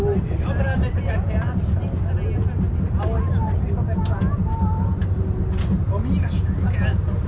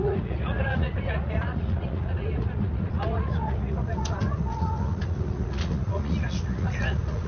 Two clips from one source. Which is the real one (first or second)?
first